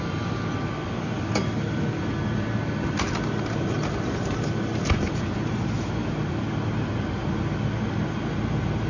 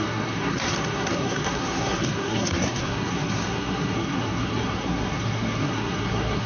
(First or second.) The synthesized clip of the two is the second